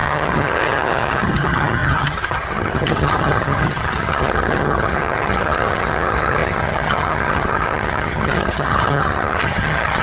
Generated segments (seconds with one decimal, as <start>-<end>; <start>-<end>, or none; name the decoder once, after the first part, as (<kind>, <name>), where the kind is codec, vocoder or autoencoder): 0.0-10.0 (vocoder, HiFi-GAN)